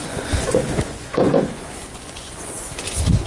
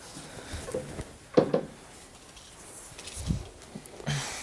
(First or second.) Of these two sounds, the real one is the second